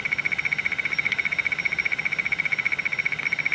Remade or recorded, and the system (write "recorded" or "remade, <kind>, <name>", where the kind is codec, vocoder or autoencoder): recorded